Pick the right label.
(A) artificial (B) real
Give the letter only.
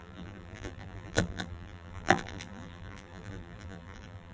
A